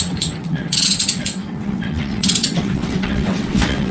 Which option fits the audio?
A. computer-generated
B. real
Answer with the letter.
A